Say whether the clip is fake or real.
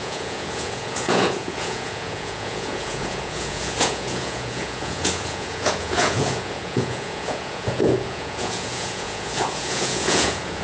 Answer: fake